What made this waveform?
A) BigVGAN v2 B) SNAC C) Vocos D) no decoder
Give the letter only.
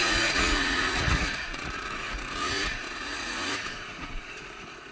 C